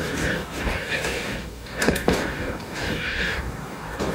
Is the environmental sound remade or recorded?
remade